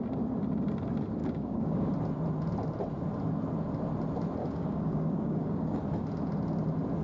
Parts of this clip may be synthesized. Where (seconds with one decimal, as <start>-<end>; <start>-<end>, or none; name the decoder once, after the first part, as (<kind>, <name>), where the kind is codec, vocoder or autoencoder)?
1.2-1.9 (codec, DAC); 4.4-5.8